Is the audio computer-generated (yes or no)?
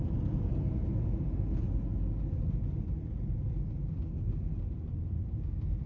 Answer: no